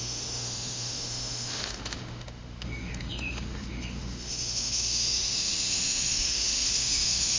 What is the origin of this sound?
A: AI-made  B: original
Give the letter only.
A